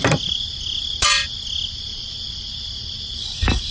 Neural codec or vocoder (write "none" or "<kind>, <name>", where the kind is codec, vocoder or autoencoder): none